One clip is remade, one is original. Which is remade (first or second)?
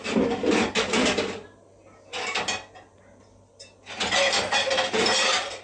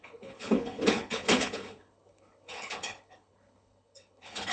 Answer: second